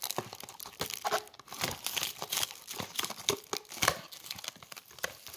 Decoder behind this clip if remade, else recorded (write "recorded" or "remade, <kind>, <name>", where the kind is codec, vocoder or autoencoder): recorded